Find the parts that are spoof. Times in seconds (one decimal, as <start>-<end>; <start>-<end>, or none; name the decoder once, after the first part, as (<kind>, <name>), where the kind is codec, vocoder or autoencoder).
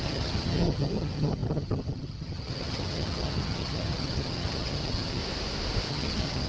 0.0-5.2 (vocoder, HiFi-GAN); 5.9-6.5